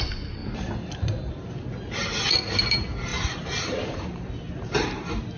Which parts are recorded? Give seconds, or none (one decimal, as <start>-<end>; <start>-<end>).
0.0-0.4; 1.3-3.1; 4.3-5.4